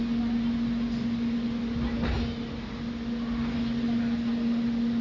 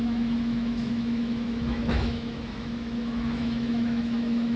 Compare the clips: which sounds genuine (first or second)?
first